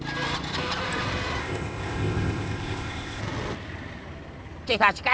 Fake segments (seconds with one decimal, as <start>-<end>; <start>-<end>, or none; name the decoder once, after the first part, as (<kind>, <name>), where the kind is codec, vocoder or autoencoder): 1.4-3.2 (codec, ZipCodec)